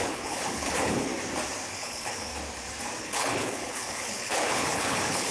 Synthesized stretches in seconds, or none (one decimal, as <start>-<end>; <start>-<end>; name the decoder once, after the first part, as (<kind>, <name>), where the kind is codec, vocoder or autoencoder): 0.0-1.1 (codec, HILCodec); 1.7-2.3; 3.0-5.3